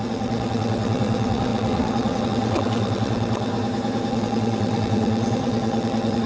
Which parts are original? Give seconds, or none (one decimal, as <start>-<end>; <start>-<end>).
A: 3.5-4.1